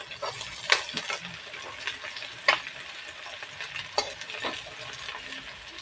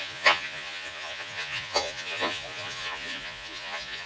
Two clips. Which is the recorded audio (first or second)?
first